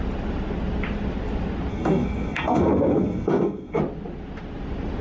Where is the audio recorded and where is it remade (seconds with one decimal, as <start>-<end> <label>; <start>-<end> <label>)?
0.0-1.7 recorded; 1.7-3.8 remade; 3.8-5.0 recorded